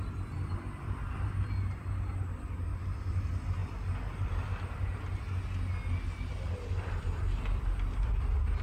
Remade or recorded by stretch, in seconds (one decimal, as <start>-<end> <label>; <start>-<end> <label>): 0.0-8.6 recorded